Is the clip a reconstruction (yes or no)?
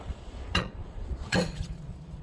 yes